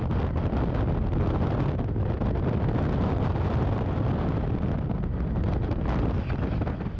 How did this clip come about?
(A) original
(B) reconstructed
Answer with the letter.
A